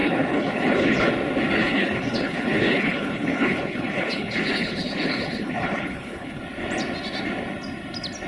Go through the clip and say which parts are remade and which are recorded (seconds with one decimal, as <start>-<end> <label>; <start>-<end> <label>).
0.0-1.1 remade; 1.1-1.6 recorded; 1.6-6.4 remade; 6.4-8.3 recorded